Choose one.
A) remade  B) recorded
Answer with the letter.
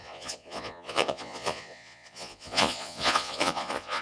A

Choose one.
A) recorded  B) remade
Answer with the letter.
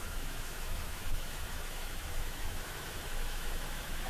B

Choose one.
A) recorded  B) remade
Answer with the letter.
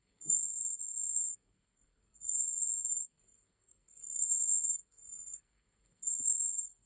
B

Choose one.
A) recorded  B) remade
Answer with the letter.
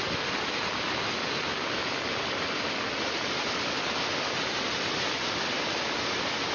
A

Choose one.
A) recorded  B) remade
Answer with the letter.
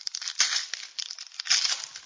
A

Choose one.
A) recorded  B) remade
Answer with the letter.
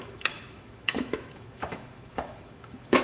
B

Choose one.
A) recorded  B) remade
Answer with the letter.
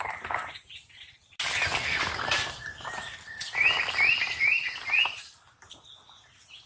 A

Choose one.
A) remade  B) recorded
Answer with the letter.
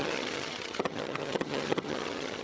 A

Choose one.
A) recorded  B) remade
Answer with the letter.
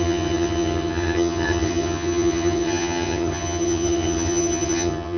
B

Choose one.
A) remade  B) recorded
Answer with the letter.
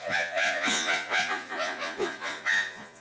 A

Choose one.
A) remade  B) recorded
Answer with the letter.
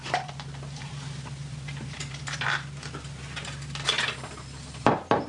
B